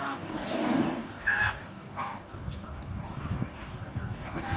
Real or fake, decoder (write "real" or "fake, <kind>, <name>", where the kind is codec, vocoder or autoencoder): fake, codec, DAC